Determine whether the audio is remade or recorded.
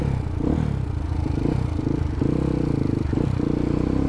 recorded